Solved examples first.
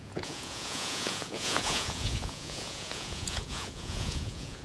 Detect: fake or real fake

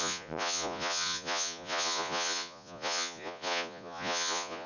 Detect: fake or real fake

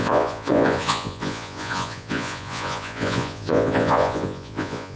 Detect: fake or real fake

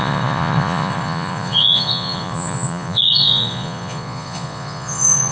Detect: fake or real fake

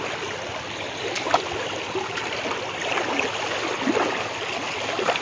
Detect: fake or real real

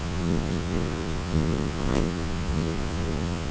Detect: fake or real fake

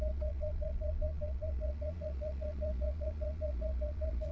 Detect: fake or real fake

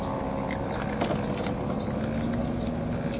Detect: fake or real real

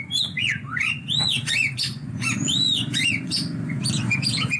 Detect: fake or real fake